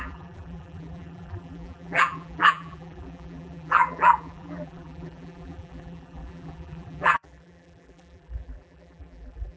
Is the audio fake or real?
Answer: fake